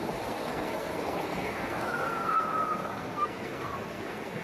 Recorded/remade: remade